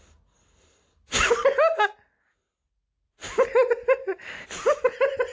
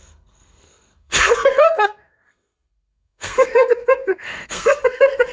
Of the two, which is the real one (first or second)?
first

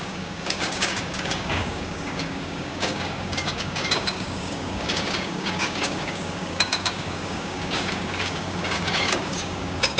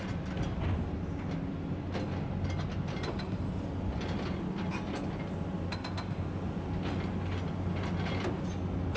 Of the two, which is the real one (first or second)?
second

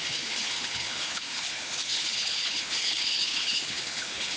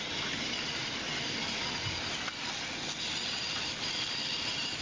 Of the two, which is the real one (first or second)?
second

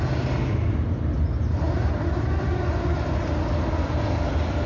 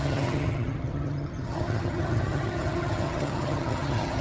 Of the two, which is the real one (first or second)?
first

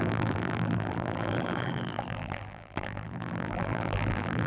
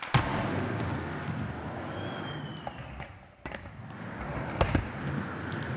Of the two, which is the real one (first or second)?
second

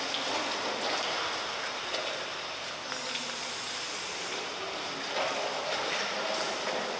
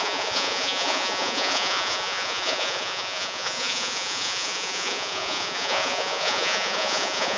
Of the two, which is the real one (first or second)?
first